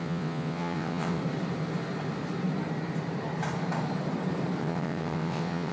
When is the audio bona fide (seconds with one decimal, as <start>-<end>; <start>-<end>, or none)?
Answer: 1.2-4.6